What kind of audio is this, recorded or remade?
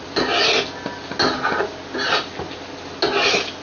recorded